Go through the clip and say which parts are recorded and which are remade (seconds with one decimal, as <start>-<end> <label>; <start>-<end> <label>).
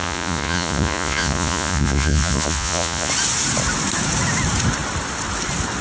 0.0-3.1 remade; 3.1-5.8 recorded